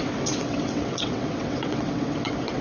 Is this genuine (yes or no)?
no